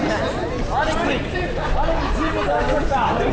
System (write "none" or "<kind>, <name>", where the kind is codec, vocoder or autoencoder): none